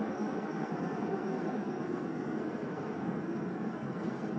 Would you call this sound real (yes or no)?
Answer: no